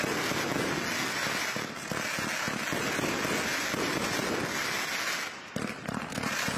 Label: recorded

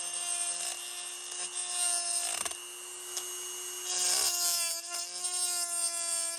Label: recorded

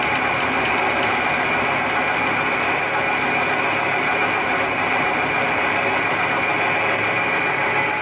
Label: recorded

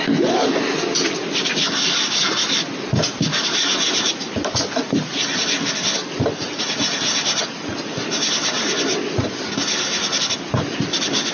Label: recorded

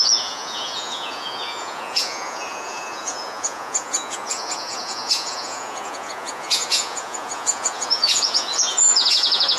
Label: remade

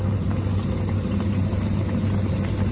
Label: recorded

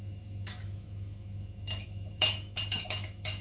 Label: remade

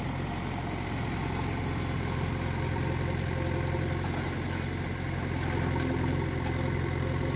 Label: recorded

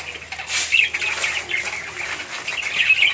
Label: recorded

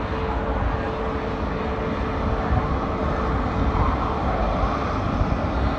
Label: recorded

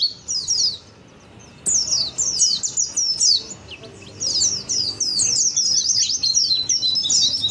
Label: recorded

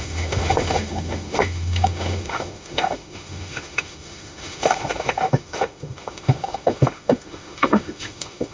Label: remade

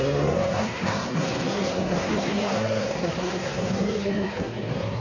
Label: remade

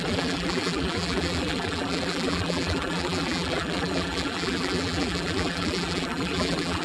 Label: remade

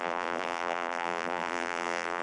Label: remade